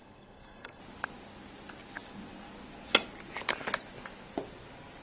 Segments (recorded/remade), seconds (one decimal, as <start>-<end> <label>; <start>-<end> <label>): 0.0-0.8 remade; 0.8-5.0 recorded